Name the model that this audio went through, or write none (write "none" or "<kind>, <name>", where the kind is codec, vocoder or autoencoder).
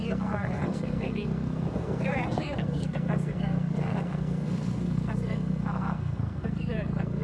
codec, SNAC